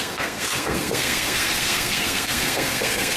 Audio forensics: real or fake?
fake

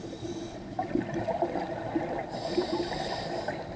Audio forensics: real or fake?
real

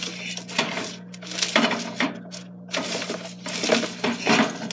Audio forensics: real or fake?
real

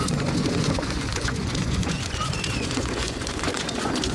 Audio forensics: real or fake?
fake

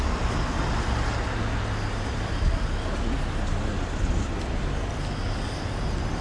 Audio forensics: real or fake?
real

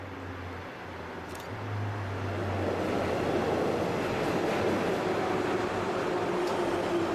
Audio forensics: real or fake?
real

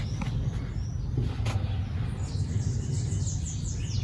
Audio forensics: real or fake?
real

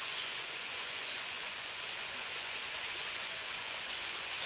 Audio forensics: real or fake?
fake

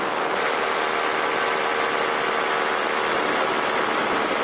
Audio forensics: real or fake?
real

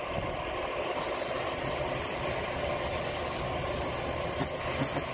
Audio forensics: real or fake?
real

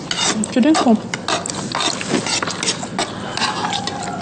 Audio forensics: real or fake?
real